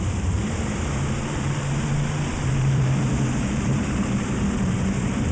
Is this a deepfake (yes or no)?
yes